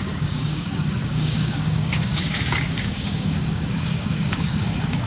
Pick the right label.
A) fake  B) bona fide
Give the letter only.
A